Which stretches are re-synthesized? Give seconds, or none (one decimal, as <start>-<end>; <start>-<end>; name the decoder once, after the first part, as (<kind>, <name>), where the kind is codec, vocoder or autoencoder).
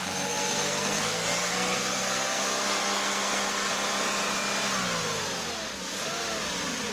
0.0-3.7 (codec, SNAC)